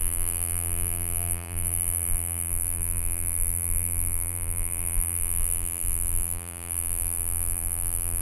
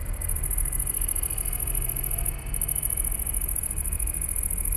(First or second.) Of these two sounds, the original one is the second